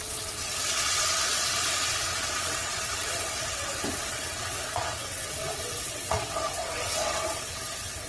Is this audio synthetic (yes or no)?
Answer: yes